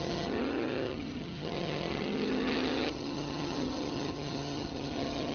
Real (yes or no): no